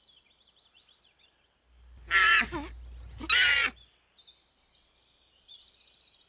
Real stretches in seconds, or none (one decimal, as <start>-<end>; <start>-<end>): 2.3-4.2